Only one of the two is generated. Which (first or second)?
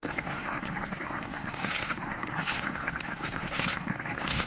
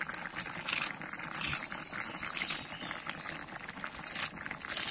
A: first